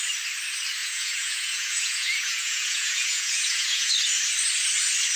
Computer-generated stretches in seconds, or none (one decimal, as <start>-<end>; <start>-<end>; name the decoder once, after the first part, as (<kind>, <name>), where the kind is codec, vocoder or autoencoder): 0.8-3.9 (vocoder, Vocos)